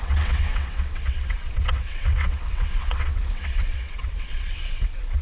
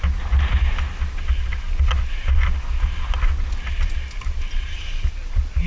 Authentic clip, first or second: second